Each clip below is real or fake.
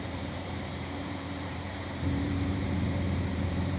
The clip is fake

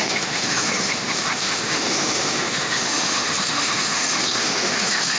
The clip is fake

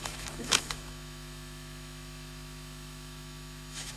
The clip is fake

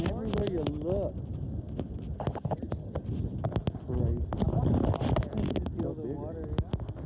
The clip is real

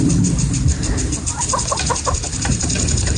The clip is real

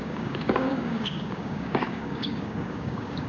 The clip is fake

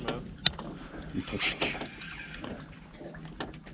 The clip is real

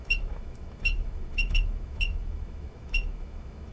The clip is fake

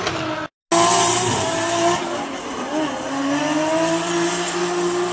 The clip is real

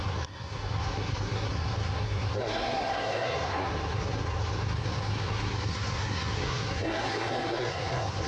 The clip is fake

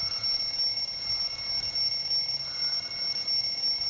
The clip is real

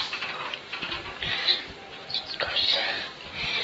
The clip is real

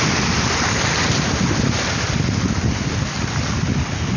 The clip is real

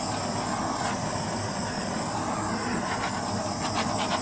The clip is real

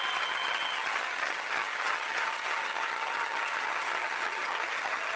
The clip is fake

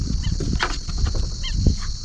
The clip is fake